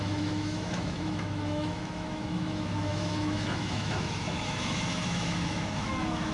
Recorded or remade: remade